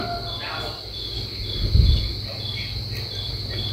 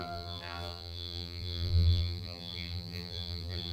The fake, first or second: second